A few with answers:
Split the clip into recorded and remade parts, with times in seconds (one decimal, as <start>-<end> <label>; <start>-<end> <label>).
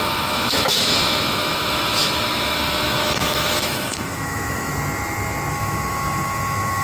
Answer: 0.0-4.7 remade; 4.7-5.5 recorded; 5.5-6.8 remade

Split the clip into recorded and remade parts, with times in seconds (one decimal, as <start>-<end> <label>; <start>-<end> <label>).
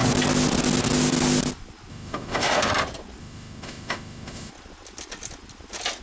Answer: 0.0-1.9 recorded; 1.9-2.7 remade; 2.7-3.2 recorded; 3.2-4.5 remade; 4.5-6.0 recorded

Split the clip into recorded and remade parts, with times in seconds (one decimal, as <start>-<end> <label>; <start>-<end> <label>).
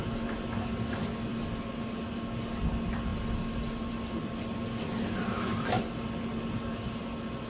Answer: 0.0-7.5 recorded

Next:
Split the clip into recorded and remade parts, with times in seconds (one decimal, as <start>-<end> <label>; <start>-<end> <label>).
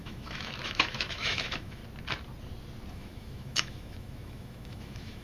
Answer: 0.0-1.8 remade; 1.8-2.9 recorded; 2.9-5.2 remade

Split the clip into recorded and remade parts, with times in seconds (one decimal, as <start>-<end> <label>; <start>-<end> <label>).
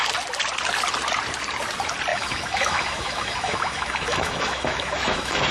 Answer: 0.0-2.1 recorded; 2.1-5.5 remade